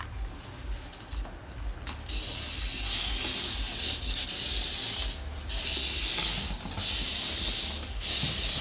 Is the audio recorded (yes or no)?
yes